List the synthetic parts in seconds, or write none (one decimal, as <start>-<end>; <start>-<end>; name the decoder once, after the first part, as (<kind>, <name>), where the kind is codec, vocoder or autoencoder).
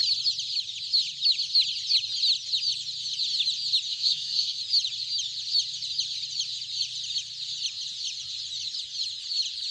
3.9-4.6 (codec, SNAC)